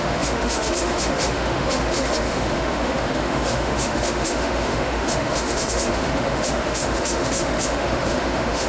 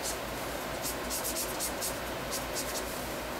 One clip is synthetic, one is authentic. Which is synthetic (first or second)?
first